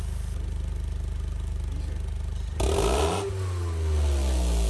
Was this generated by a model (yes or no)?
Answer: no